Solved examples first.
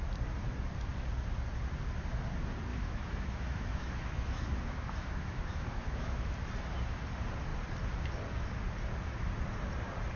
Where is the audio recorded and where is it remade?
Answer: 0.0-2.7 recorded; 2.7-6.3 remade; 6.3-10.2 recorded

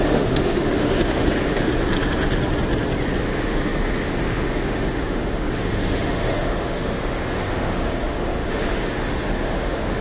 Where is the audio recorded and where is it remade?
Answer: 0.0-1.7 remade; 1.7-3.2 recorded; 3.2-10.0 remade

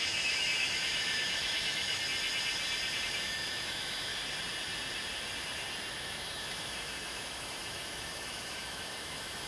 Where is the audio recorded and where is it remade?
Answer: 0.0-2.0 remade; 2.0-2.9 recorded; 2.9-4.1 remade; 4.1-6.0 recorded; 6.0-9.5 remade